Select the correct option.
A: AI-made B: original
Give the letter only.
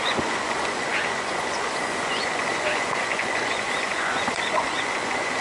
A